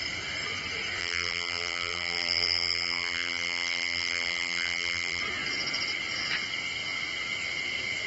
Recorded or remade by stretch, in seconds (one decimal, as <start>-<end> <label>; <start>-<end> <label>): 0.0-1.0 recorded; 1.0-5.2 remade; 5.2-8.1 recorded